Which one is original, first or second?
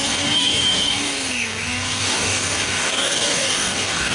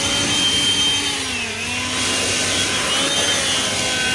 second